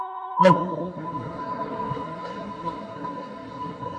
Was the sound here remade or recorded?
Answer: remade